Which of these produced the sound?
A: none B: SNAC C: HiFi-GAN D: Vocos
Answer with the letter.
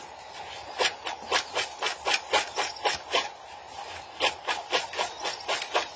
A